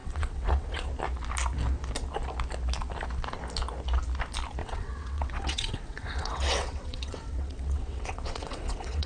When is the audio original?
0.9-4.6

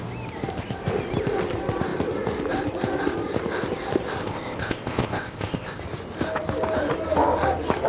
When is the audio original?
0.0-4.2; 5.8-7.9

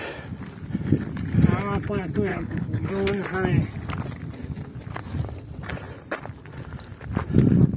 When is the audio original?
0.0-2.3; 2.9-7.8

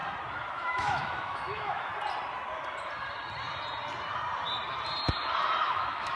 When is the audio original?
0.0-0.5; 1.9-5.6

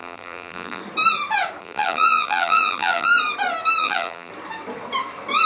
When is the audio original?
0.8-1.6; 3.1-3.8; 4.3-5.5

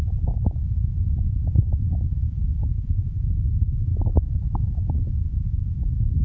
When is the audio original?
none

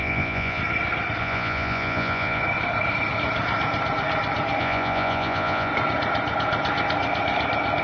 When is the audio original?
0.6-1.2; 2.4-4.6; 5.7-7.8